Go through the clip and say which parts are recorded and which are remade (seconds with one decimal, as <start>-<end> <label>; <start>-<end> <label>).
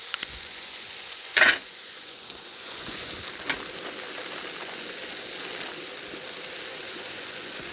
0.0-3.1 remade; 3.1-4.6 recorded; 4.6-5.3 remade; 5.3-6.7 recorded; 6.7-7.7 remade